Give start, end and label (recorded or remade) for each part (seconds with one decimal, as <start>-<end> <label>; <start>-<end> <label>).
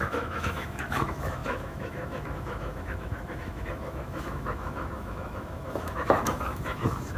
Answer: 0.0-7.2 remade